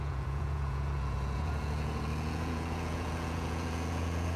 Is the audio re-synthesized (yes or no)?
yes